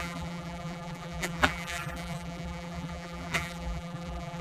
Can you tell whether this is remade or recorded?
remade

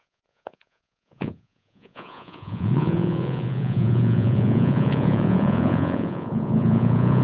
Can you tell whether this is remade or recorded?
remade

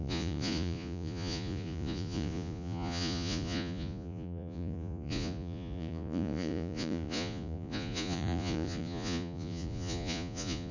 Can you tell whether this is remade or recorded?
remade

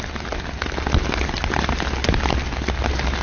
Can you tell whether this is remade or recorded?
recorded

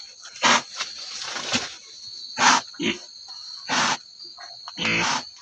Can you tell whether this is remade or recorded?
recorded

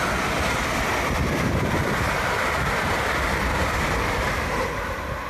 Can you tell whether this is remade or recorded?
recorded